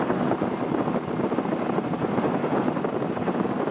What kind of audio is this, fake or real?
real